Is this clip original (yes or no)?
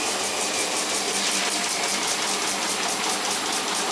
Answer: yes